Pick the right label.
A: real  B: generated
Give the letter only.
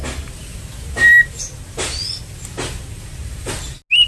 A